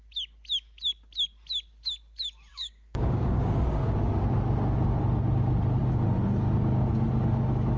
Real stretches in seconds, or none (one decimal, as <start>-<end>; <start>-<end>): 0.0-2.5; 4.1-7.8